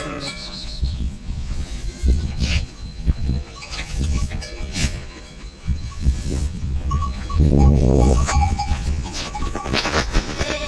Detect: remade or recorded remade